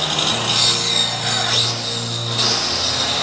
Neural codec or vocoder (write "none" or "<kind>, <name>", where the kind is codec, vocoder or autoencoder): none